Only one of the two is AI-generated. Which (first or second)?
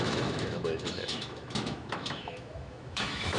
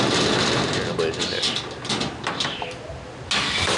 first